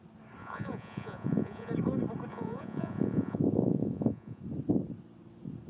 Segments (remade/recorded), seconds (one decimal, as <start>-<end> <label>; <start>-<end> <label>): 0.0-0.4 recorded; 0.4-1.7 remade; 1.7-2.3 recorded; 2.3-4.4 remade; 4.4-5.7 recorded